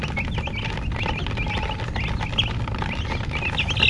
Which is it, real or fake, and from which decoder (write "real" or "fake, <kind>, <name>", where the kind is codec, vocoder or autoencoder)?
real